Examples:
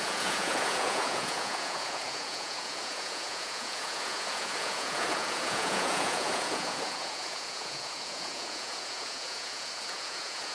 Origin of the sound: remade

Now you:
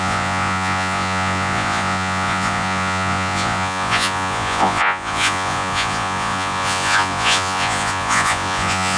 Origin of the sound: remade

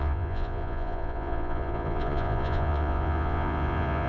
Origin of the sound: remade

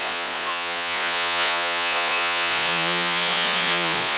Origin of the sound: remade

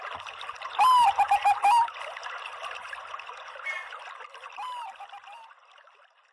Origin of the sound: recorded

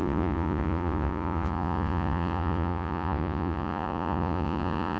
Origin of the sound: remade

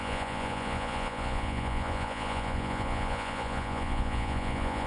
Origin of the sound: remade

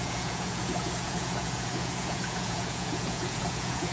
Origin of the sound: remade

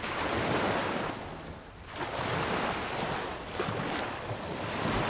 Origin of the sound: recorded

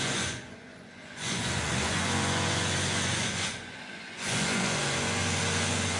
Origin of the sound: remade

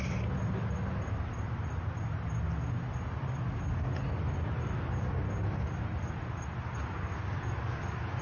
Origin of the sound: recorded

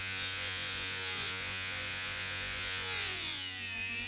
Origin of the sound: remade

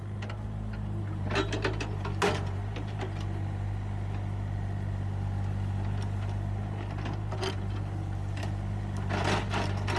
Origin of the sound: recorded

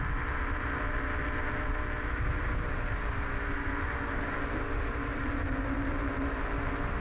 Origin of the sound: recorded